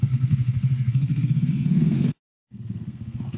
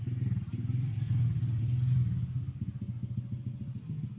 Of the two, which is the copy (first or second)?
first